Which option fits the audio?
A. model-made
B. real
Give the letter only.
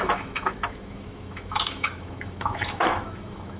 A